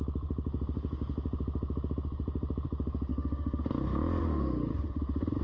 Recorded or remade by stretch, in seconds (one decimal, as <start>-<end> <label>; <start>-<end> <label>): 0.0-3.1 recorded; 3.1-3.6 remade; 3.6-4.2 recorded; 4.2-5.0 remade; 5.0-5.4 recorded